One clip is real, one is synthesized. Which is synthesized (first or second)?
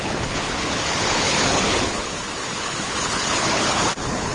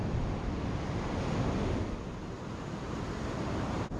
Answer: first